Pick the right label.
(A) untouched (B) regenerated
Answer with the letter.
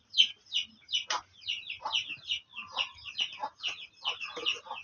A